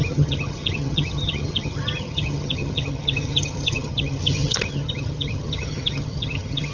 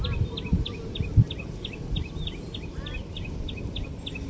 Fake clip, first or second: first